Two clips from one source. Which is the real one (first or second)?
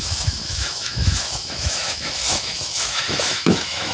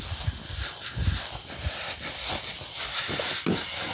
second